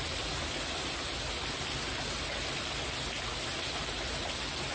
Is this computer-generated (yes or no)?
no